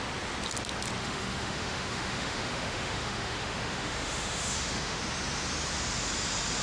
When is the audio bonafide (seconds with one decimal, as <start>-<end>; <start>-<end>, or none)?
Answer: 0.0-1.0; 5.0-6.6